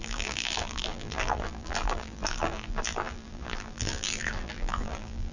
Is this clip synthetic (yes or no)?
yes